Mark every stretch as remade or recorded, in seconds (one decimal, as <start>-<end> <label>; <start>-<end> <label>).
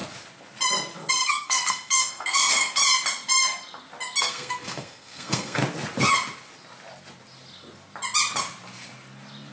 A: 0.0-1.1 recorded; 1.1-2.8 remade; 2.8-4.2 recorded; 4.2-5.6 remade; 5.6-9.5 recorded